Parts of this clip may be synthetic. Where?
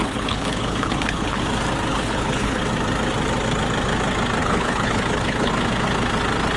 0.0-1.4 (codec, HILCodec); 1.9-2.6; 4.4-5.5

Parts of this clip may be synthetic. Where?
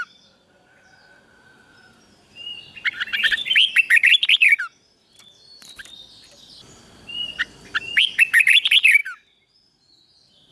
0.0-4.1 (vocoder, BigVGAN v2); 5.0-7.4; 8.0-9.0